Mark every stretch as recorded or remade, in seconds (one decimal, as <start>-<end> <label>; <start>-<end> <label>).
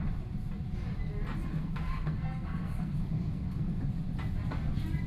0.0-1.5 recorded; 1.5-3.8 remade; 3.8-5.1 recorded